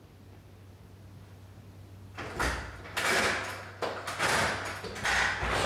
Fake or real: real